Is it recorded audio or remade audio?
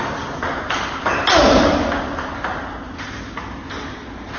recorded